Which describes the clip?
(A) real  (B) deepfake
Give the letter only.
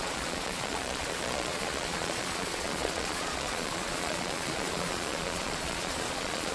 B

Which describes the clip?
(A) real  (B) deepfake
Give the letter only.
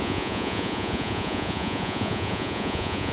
B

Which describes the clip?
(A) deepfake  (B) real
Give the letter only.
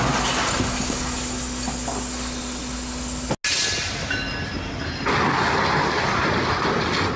B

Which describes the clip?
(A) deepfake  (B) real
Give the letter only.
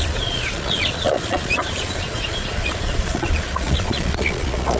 A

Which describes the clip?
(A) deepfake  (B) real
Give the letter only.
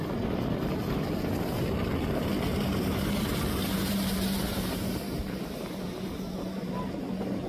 B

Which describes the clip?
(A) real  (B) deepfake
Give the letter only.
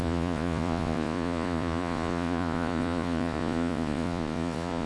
B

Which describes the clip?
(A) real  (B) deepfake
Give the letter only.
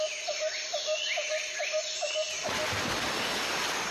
A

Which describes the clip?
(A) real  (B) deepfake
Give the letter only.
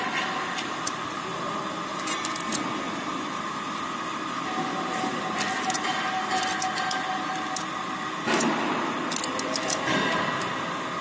A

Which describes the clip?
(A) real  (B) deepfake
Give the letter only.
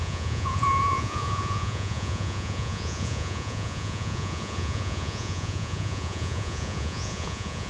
B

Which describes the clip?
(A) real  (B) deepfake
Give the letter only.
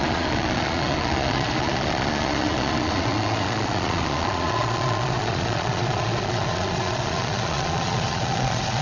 B